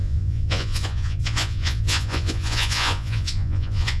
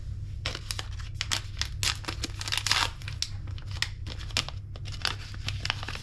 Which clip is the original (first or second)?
second